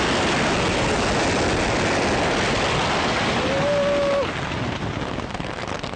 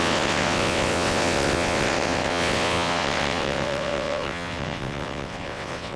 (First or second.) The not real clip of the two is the second